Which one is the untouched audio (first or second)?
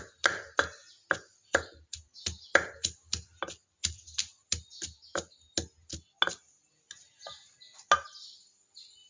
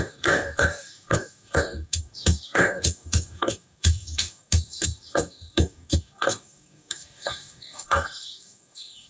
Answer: first